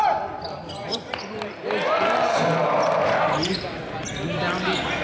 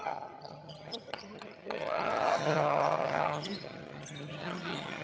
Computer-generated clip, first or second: second